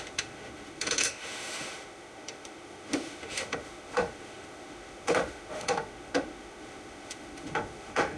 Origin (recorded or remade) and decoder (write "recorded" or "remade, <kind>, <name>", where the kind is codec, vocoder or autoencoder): remade, autoencoder, DAC-VAE